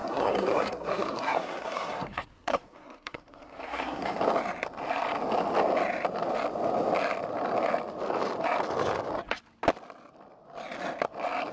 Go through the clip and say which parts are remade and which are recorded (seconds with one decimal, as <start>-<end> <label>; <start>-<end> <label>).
0.0-4.2 remade; 4.2-11.5 recorded